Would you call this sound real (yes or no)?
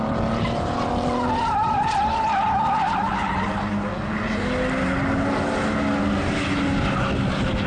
yes